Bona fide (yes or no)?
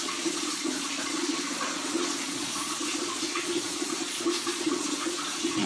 no